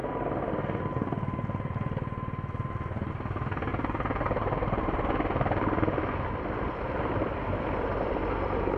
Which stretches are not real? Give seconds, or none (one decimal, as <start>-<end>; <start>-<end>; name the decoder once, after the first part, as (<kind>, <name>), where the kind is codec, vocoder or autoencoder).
3.1-3.7 (vocoder, BigVGAN v2); 6.3-8.8